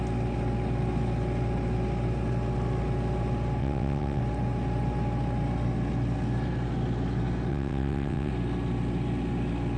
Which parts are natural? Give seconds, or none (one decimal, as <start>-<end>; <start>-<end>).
0.0-3.6; 4.2-7.5; 8.3-9.8